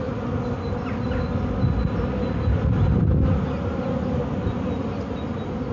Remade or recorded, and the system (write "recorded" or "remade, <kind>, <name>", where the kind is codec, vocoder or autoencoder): recorded